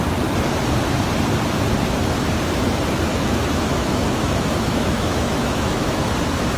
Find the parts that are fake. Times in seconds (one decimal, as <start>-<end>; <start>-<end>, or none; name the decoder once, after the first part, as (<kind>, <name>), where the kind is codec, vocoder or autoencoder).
3.1-6.0 (autoencoder, DAC-VAE)